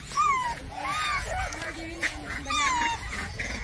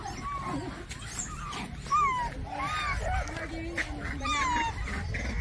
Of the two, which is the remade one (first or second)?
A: first